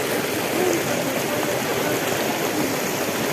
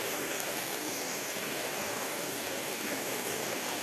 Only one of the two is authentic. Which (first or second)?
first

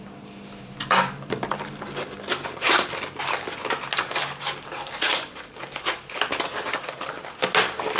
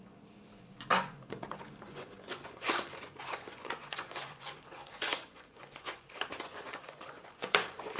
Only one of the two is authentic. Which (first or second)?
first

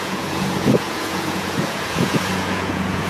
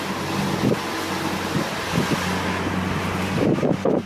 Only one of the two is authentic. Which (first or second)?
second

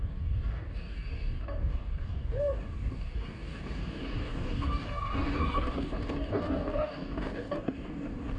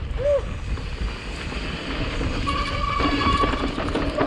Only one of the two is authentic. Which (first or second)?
second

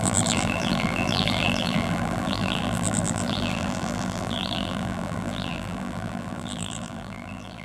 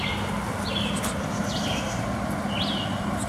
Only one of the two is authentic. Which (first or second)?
second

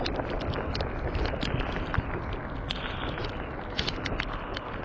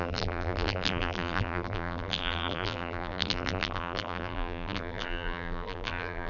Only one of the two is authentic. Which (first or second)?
first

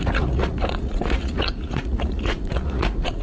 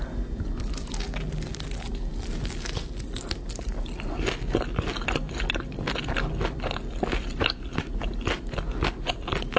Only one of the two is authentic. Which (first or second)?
second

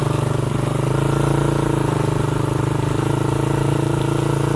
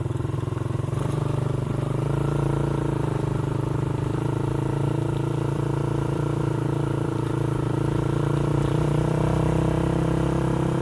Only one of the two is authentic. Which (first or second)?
first